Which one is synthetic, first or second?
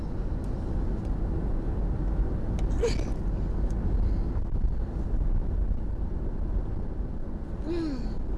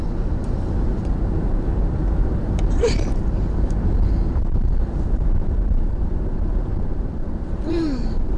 second